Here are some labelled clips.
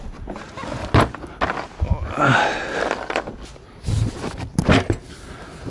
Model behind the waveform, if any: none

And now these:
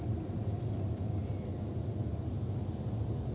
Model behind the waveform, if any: none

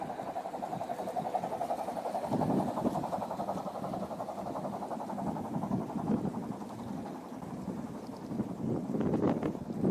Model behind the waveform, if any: none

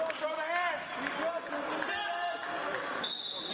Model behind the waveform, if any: none